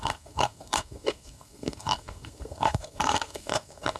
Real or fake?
fake